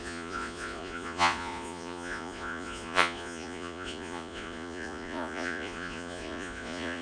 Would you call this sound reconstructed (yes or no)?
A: yes